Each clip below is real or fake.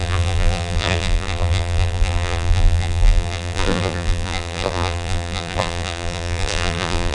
fake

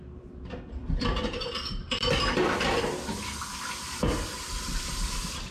fake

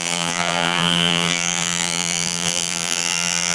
fake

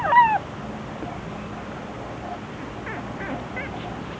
real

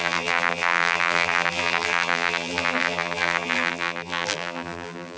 fake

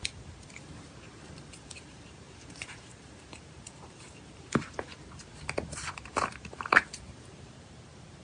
fake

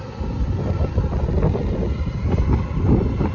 fake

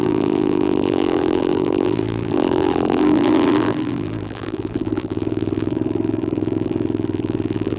fake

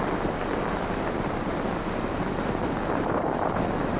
fake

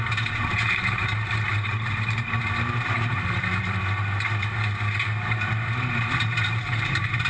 fake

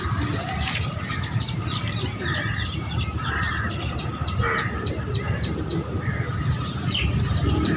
fake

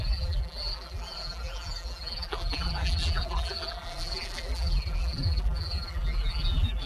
fake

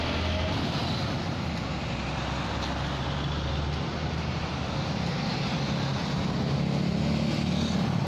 real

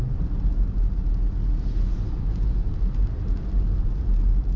real